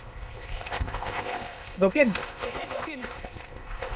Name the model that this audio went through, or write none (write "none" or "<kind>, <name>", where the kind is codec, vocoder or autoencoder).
codec, ZipCodec